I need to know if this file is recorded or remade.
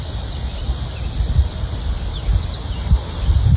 recorded